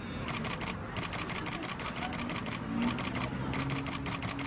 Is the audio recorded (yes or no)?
yes